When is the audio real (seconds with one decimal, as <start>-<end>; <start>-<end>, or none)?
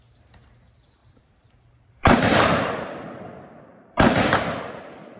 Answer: 0.0-1.0; 2.4-3.7; 4.3-5.2